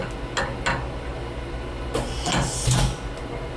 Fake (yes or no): no